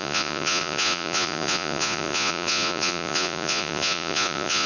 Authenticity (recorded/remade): remade